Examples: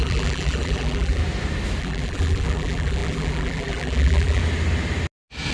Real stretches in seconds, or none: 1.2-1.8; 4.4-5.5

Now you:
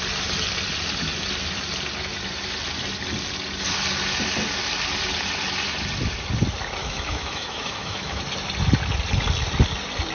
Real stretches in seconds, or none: 0.0-6.8; 8.2-10.1

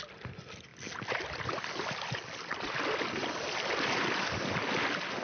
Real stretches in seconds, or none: 0.0-5.2

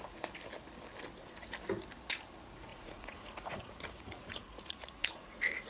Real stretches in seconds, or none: 0.0-2.7

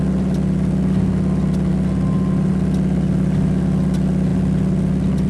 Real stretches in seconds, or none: 0.0-5.3

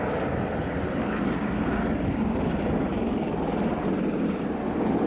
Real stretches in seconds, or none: 0.0-1.0; 1.8-2.9; 3.4-5.1